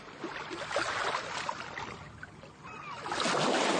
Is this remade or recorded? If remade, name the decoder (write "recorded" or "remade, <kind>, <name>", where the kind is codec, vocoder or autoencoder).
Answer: recorded